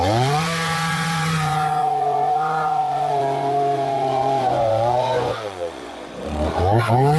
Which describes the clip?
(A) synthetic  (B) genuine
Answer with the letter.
A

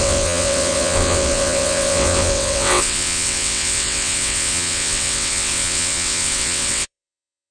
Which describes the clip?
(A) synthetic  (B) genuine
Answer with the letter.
A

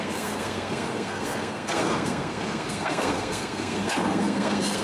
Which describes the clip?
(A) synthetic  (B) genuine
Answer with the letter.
A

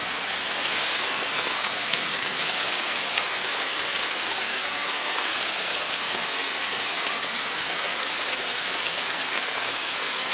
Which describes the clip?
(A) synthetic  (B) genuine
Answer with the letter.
A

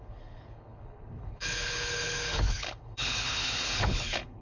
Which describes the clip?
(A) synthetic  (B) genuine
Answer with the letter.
A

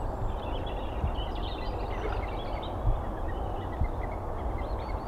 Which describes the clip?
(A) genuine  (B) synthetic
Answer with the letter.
A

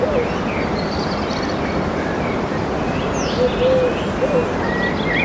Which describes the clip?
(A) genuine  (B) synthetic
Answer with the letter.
A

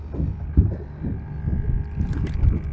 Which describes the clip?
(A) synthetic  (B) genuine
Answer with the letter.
B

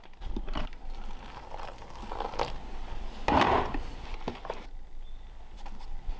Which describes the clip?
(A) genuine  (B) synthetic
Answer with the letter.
A